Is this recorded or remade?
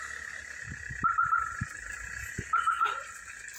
recorded